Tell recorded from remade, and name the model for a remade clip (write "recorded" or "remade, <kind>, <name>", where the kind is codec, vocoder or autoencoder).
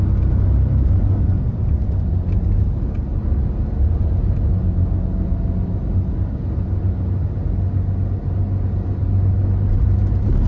recorded